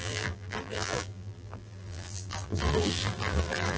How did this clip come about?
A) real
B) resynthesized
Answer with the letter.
B